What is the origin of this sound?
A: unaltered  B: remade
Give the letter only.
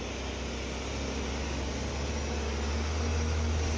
A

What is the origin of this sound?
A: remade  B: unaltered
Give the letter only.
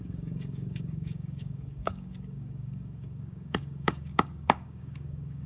A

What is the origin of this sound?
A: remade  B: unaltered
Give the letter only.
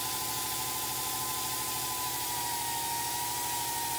B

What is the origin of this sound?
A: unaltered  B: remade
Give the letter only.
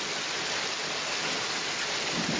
A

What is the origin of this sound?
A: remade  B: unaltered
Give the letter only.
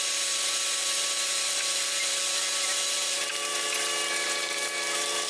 A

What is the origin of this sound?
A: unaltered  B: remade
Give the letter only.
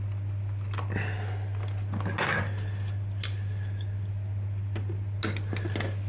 A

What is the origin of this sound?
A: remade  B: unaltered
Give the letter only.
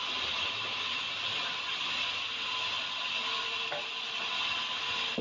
B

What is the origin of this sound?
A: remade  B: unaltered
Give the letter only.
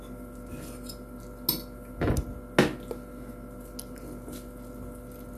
B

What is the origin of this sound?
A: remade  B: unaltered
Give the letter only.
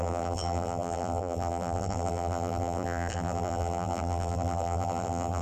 A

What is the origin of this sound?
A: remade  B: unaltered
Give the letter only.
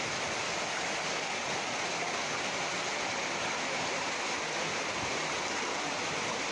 B